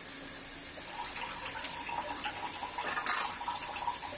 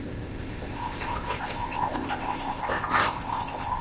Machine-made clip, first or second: second